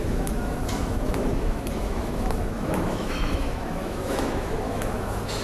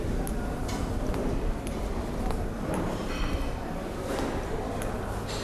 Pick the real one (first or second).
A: second